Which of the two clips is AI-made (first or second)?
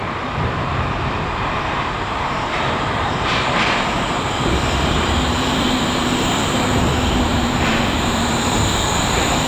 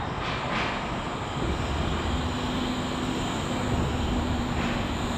first